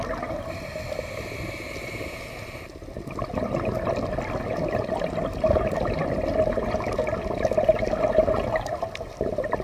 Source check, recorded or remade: recorded